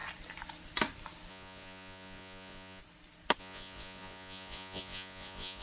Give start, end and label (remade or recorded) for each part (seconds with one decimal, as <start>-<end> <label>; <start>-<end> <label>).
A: 0.0-1.3 recorded; 1.3-2.8 remade; 2.8-3.4 recorded; 3.4-5.6 remade